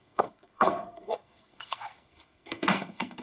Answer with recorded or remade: remade